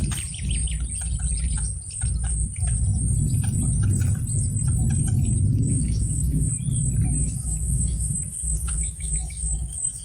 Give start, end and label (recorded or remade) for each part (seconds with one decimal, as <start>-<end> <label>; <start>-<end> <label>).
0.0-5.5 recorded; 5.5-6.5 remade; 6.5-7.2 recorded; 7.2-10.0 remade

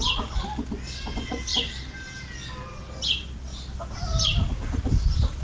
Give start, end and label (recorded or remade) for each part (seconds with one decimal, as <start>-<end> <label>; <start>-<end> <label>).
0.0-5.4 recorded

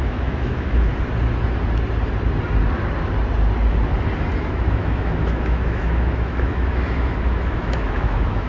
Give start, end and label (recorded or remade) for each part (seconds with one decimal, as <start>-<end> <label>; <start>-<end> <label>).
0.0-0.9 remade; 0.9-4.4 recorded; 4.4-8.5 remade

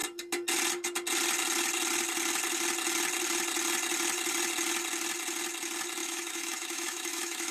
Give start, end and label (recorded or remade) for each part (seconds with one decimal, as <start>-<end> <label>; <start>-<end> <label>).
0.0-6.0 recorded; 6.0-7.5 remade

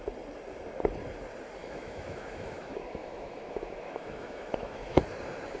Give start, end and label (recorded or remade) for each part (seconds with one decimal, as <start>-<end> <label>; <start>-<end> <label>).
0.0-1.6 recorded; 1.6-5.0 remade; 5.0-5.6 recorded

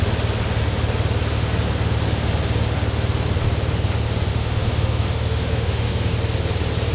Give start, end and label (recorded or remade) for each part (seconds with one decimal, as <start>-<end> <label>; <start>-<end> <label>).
0.0-4.3 recorded; 4.3-6.1 remade; 6.1-6.9 recorded

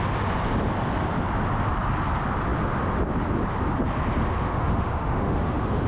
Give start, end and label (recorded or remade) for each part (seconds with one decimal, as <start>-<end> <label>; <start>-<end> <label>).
0.0-4.2 recorded; 4.2-5.9 remade